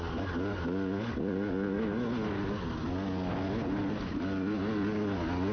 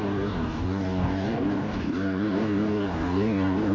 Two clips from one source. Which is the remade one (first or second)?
second